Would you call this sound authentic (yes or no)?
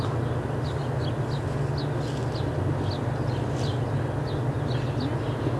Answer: yes